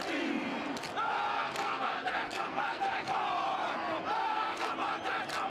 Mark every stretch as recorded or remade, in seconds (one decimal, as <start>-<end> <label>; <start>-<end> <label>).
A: 0.0-1.3 recorded; 1.3-3.1 remade; 3.1-4.2 recorded; 4.2-4.7 remade; 4.7-5.5 recorded